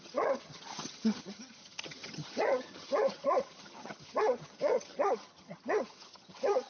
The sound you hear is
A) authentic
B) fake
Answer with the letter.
B